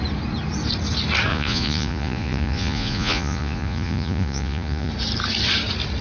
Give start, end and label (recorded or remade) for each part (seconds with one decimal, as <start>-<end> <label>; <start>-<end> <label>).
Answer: 0.0-1.3 recorded; 1.3-4.9 remade; 4.9-6.0 recorded